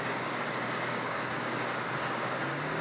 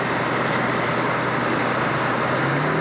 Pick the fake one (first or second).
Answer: first